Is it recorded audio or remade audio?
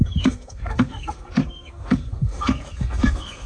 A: remade